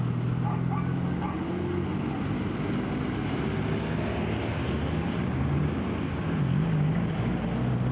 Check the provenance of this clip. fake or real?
real